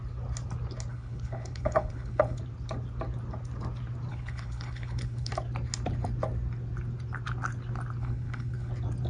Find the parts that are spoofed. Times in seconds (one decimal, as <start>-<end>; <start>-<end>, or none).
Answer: 0.9-2.4; 4.1-5.3; 8.0-8.7